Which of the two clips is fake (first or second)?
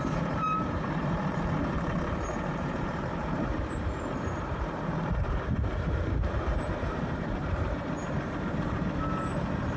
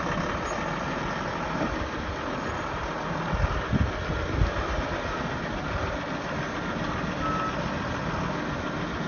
first